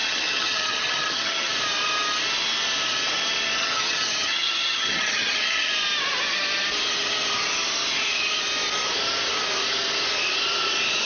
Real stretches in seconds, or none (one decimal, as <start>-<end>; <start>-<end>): 1.5-3.6; 5.7-11.0